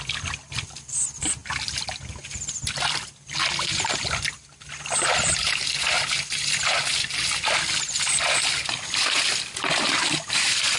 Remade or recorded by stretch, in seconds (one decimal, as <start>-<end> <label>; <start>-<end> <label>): 0.0-10.8 recorded